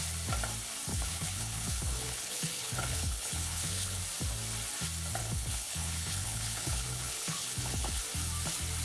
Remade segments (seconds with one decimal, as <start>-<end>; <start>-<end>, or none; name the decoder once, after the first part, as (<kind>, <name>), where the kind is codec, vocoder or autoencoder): 0.9-4.0 (codec, HILCodec); 5.2-8.0